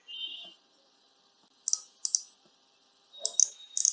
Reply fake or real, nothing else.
real